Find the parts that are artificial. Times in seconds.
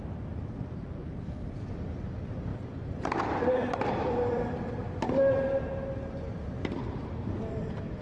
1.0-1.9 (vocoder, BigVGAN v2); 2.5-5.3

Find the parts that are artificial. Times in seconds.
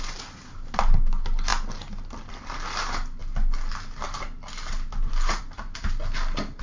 none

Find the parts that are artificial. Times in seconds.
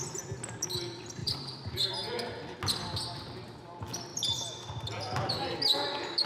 1.2-2.1 (vocoder, BigVGAN v2)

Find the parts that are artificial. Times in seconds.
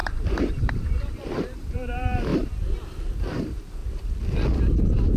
0.0-2.3 (vocoder, BigVGAN v2); 3.2-3.8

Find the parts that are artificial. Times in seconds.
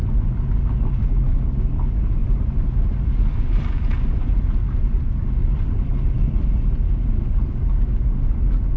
2.2-4.5 (vocoder, BigVGAN v2); 5.4-7.1